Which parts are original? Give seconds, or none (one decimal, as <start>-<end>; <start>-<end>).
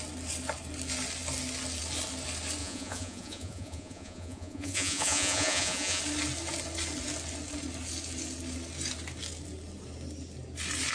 0.0-2.6; 6.0-10.9